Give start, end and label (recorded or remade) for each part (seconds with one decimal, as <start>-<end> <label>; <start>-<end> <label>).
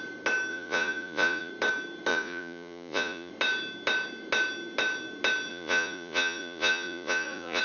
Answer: 0.0-0.5 recorded; 0.5-1.5 remade; 1.5-2.1 recorded; 2.1-3.3 remade; 3.3-5.5 recorded; 5.5-7.6 remade